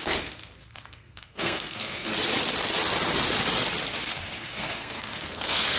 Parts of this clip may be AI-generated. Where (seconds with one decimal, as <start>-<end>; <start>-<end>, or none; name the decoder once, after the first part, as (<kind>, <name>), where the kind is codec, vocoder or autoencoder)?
0.0-2.1 (codec, SNAC); 4.0-5.8